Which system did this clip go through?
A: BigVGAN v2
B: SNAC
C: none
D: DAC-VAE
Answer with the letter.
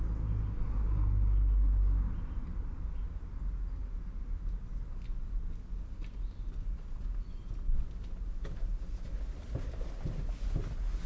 C